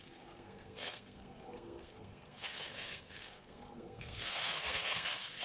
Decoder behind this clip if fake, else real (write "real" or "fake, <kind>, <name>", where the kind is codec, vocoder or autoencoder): fake, codec, SNAC